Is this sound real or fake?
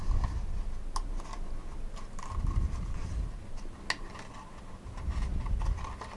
real